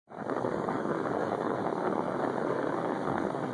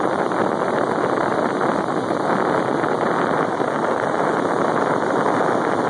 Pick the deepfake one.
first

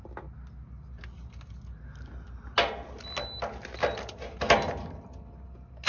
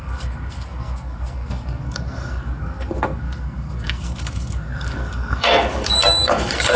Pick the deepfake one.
second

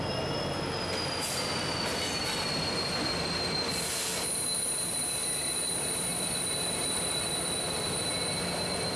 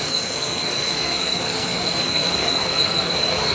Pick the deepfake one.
second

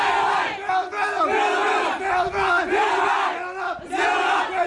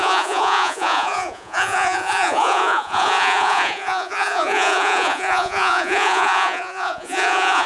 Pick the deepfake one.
second